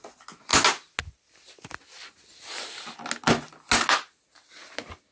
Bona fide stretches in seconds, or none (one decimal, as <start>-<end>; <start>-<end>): 0.0-5.1